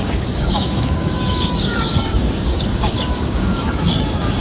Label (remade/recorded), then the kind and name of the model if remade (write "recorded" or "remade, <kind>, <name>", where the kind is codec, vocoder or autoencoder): remade, codec, DAC